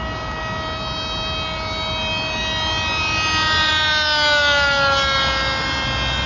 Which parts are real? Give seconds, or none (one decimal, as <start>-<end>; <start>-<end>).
0.0-6.3